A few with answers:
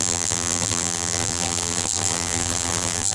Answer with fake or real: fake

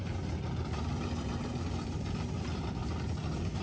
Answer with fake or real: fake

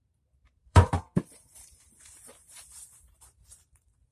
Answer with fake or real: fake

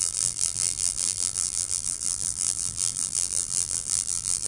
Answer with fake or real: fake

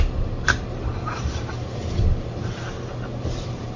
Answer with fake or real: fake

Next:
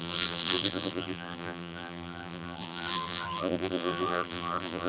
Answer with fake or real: fake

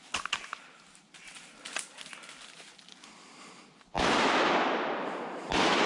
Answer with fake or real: real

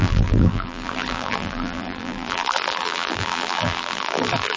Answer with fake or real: fake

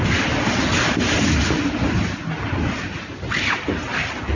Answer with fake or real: real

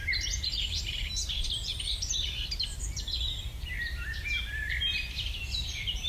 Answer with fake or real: fake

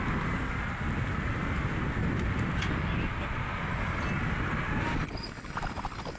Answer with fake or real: real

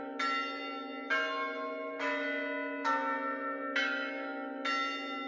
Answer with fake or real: real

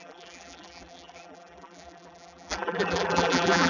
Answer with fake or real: fake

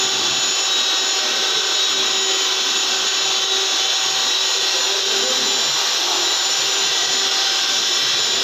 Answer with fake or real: real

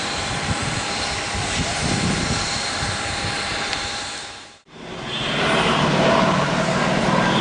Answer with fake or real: fake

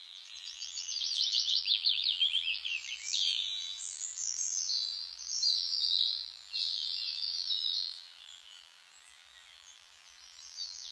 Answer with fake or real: fake